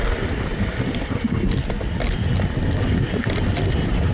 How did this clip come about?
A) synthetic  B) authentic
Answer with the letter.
B